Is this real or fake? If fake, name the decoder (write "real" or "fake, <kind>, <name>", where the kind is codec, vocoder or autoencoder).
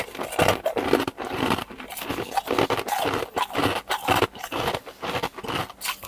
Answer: real